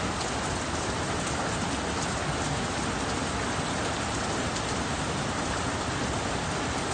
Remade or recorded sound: recorded